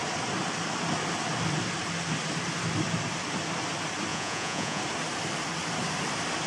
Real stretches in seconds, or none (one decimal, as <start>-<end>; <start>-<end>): 0.0-4.1; 4.8-6.5